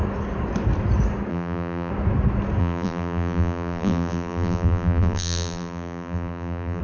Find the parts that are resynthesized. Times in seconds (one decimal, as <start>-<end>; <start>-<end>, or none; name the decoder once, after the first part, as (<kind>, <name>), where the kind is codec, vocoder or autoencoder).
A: 1.3-1.9 (vocoder, BigVGAN v2); 2.6-6.8